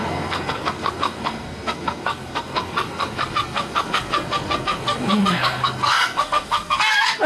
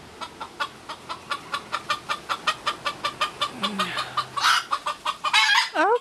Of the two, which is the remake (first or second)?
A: first